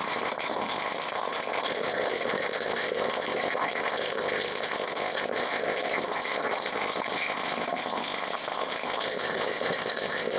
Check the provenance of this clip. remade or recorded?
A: remade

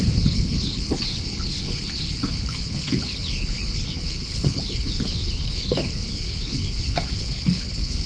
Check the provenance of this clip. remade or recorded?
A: remade